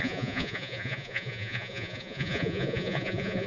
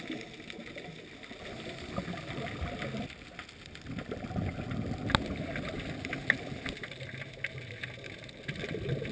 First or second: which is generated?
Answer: first